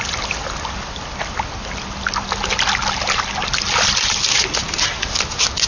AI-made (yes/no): no